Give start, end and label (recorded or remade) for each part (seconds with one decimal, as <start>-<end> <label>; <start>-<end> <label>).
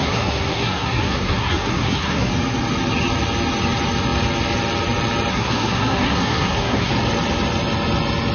0.0-2.3 remade; 2.3-5.3 recorded; 5.3-6.9 remade; 6.9-8.3 recorded